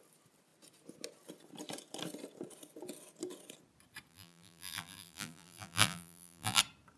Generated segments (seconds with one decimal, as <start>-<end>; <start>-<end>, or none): 4.1-6.6

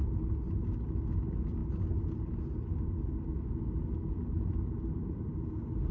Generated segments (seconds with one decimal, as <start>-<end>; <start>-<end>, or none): none

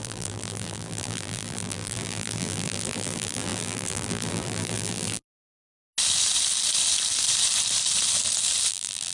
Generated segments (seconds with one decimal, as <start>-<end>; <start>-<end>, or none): 0.0-5.2; 8.7-9.1